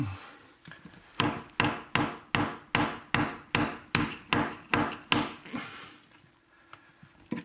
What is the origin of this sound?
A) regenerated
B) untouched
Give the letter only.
B